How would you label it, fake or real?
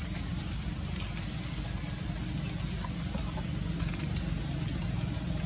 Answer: real